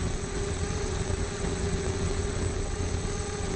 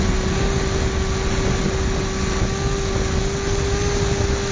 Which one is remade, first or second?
first